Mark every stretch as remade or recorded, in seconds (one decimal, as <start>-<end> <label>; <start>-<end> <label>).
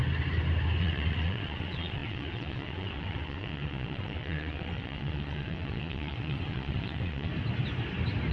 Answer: 0.0-0.8 recorded; 0.8-7.3 remade; 7.3-8.3 recorded